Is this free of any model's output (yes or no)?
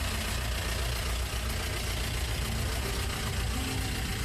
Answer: yes